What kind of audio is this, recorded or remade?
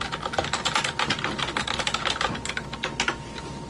recorded